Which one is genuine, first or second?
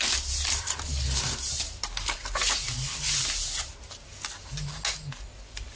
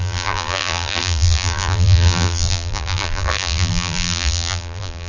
first